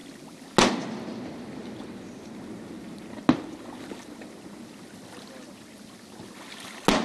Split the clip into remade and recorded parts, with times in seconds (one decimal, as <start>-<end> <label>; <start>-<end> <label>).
0.0-7.0 recorded